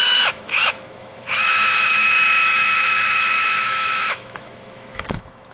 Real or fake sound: fake